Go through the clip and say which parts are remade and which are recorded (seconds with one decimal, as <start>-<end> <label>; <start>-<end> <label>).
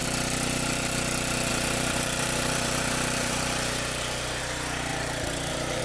0.0-1.5 recorded; 1.5-4.4 remade; 4.4-4.9 recorded; 4.9-5.8 remade